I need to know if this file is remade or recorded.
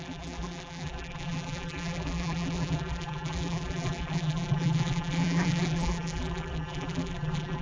remade